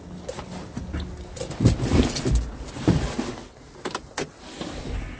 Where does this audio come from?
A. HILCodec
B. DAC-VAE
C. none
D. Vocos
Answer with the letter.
C